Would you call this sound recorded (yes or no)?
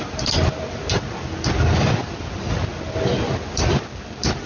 yes